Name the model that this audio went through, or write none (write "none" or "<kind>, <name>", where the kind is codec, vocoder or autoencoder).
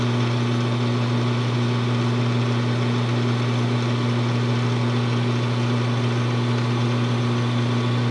none